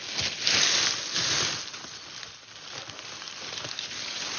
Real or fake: real